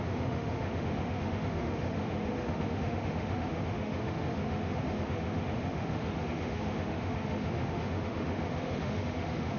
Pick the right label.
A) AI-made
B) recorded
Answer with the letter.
A